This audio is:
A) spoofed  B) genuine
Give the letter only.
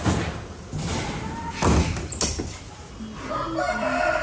B